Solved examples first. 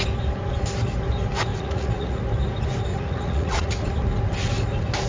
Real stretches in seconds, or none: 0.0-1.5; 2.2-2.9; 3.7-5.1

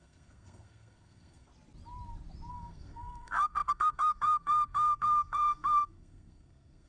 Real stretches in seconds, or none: 1.5-2.5

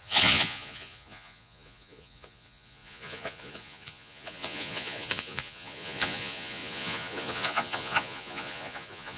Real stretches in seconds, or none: none

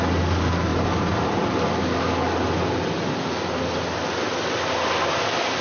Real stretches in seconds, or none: 0.0-5.6